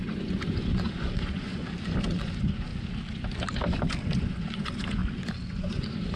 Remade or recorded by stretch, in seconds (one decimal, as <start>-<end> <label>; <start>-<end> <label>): 0.0-1.6 remade; 1.6-2.1 recorded; 2.1-2.7 remade; 2.7-4.2 recorded; 4.2-5.0 remade; 5.0-5.5 recorded; 5.5-6.2 remade